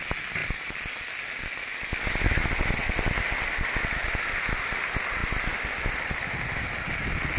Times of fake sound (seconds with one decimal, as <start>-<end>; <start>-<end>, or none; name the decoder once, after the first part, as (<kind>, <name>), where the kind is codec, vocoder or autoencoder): none